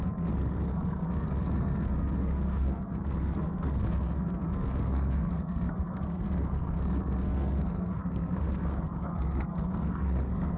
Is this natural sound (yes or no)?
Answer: no